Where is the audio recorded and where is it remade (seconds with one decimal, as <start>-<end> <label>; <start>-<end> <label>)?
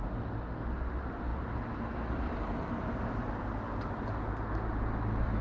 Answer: 0.0-5.4 recorded